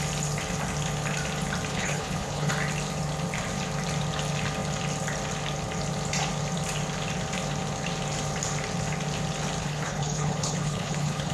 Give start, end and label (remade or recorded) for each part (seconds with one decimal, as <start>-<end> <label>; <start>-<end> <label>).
0.0-1.7 recorded; 1.7-2.5 remade; 2.5-9.6 recorded; 9.6-11.3 remade